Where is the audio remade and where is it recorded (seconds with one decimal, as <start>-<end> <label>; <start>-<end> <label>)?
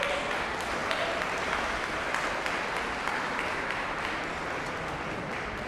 0.0-5.7 recorded